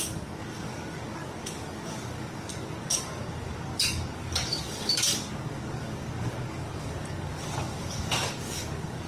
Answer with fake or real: fake